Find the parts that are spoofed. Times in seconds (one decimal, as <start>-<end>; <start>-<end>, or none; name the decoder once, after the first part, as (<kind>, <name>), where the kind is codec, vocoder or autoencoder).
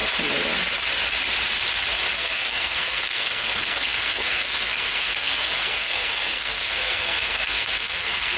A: 2.1-8.4 (codec, SNAC)